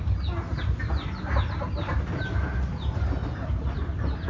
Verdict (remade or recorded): recorded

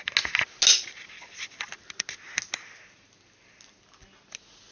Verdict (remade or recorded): recorded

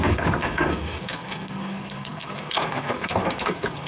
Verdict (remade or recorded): remade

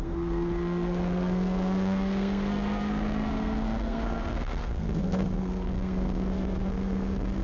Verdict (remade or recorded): remade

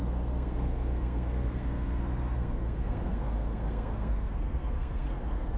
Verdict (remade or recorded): remade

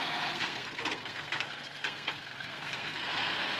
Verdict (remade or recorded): remade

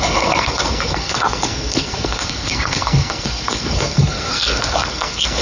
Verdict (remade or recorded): remade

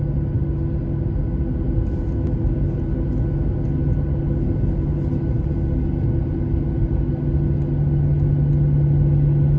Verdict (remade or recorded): recorded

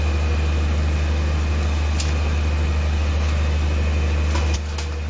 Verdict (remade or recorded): recorded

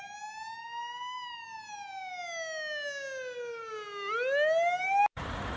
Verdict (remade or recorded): recorded